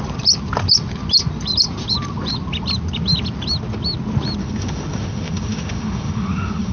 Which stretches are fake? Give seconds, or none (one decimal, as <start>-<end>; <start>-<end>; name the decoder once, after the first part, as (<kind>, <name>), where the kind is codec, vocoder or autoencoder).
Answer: 4.4-6.7 (autoencoder, DAC-VAE)